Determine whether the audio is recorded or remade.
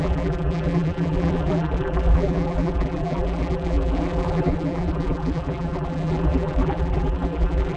remade